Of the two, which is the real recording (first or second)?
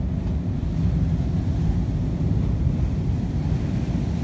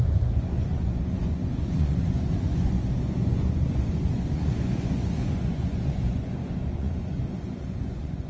first